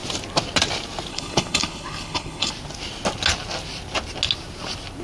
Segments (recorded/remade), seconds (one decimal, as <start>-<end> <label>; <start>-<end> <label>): 0.0-1.1 recorded; 1.1-2.5 remade; 2.5-5.0 recorded